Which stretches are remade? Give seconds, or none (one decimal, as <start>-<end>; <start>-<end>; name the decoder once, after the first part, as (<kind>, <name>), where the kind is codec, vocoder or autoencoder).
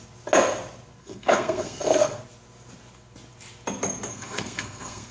1.0-2.2 (codec, SNAC); 4.1-5.1